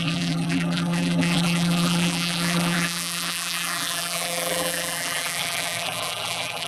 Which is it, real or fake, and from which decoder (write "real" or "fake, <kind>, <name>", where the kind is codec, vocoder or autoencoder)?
fake, vocoder, BigVGAN v2